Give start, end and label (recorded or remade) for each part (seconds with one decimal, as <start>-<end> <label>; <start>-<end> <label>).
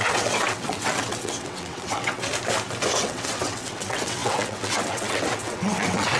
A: 0.0-2.3 remade; 2.3-3.0 recorded; 3.0-6.2 remade